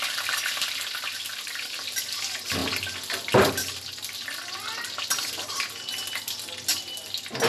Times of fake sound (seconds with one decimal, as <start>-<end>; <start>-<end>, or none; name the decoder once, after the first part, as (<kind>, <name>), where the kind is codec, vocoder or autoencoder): none